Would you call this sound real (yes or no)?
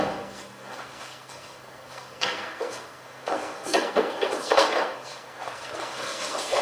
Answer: no